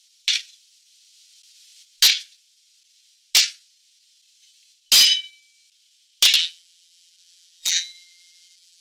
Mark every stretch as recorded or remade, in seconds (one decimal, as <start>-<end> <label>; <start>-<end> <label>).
0.0-6.4 recorded; 6.4-8.8 remade